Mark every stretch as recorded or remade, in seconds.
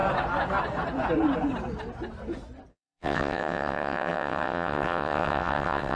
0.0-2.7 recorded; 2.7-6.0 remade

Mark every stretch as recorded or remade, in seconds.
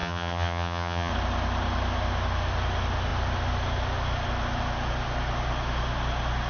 0.0-1.1 remade; 1.1-6.5 recorded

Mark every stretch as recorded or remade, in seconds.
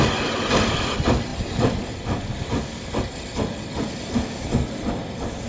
0.0-5.5 recorded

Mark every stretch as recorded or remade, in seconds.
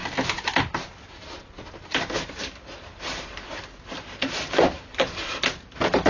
0.0-2.3 recorded; 2.3-6.1 remade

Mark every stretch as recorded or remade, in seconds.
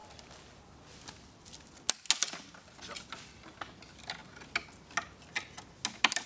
0.0-6.3 recorded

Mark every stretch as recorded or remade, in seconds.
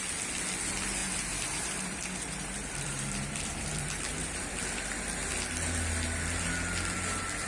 0.0-1.0 recorded; 1.0-4.5 remade; 4.5-7.5 recorded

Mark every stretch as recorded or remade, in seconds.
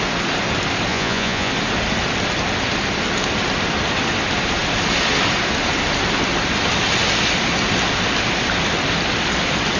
0.0-0.9 recorded; 0.9-1.5 remade; 1.5-9.8 recorded